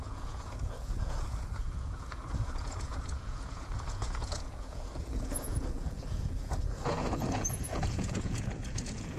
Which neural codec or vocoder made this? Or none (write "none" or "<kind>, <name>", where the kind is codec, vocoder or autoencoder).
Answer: vocoder, Vocos